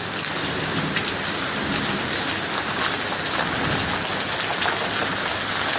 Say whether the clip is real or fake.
real